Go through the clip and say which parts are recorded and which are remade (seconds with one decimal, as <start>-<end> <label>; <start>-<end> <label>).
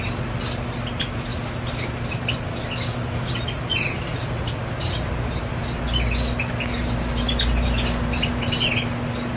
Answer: 0.0-9.4 remade